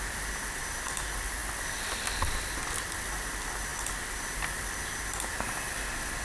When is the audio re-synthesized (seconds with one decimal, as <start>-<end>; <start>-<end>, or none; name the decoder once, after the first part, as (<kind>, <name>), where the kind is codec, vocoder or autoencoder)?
none